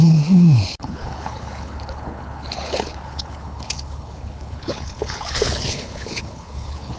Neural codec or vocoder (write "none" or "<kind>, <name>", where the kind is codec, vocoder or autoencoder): codec, HILCodec